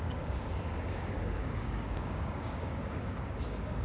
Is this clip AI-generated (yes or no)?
yes